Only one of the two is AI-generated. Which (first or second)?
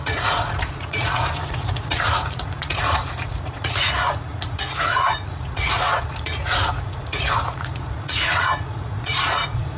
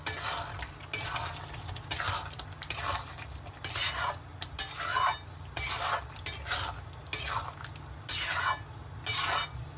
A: first